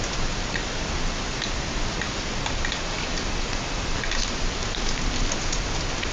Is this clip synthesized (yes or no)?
no